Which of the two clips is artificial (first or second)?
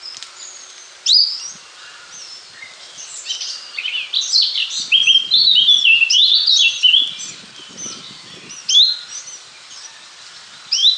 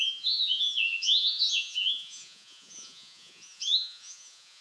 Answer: second